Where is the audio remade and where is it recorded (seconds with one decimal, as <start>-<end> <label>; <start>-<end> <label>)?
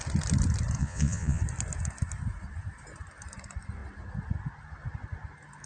0.0-0.8 recorded; 0.8-1.4 remade; 1.4-5.7 recorded